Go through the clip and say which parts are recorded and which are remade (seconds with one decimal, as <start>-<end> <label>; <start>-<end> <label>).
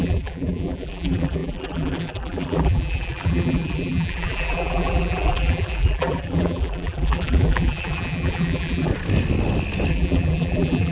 0.0-8.9 remade; 8.9-9.9 recorded; 9.9-10.9 remade